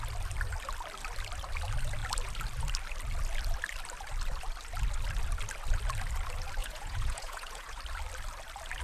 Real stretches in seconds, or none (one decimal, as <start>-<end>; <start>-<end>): 0.0-6.6; 7.8-8.8